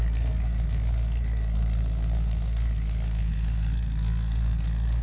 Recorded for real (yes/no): no